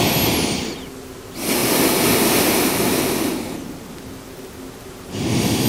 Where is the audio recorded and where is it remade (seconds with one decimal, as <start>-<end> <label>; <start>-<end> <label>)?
0.0-5.7 recorded